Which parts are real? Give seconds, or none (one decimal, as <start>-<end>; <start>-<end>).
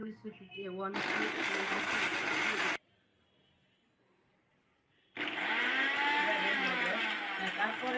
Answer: 0.5-8.0